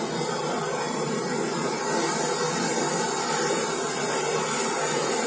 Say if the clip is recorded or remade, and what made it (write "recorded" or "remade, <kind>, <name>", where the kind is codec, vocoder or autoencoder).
recorded